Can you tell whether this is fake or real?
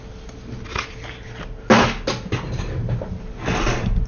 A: real